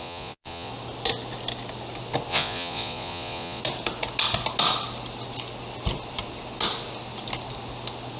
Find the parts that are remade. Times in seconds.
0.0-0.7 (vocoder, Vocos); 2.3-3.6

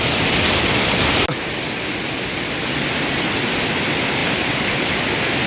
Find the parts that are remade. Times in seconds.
4.2-4.7 (vocoder, BigVGAN v2)

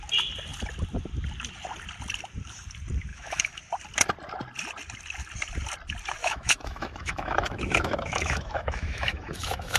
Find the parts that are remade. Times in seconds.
3.1-3.6 (autoencoder, DAC-VAE); 6.2-9.8

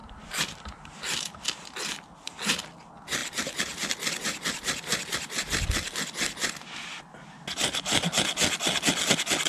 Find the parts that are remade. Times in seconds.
0.0-1.3 (vocoder, BigVGAN v2); 3.2-5.4

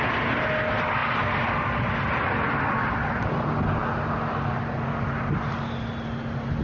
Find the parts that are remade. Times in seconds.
none

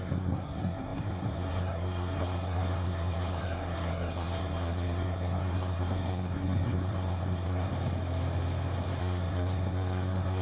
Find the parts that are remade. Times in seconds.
0.0-7.7 (codec, SNAC); 9.0-10.4

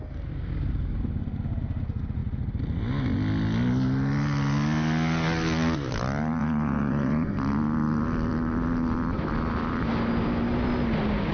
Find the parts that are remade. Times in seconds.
6.4-7.3 (vocoder, Vocos)